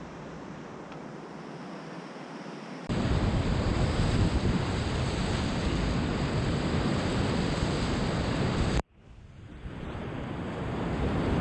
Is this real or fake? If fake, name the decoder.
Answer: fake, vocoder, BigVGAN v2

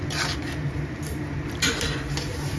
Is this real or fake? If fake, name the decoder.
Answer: real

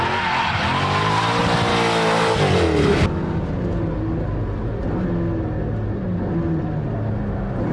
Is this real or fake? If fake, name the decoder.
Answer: real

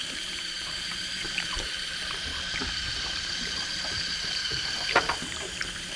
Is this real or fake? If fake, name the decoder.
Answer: fake, vocoder, BigVGAN v2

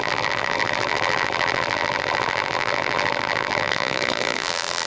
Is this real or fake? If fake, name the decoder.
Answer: fake, vocoder, BigVGAN v2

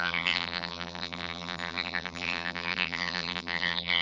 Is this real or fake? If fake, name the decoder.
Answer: fake, vocoder, BigVGAN v2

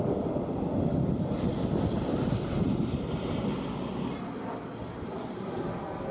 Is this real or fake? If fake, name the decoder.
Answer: real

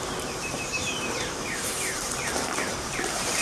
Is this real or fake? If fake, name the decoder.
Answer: fake, vocoder, BigVGAN v2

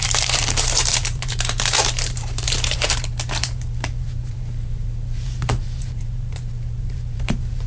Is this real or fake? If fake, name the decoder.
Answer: fake, vocoder, BigVGAN v2